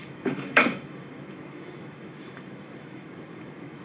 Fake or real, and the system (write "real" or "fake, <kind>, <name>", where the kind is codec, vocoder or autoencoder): fake, autoencoder, DAC-VAE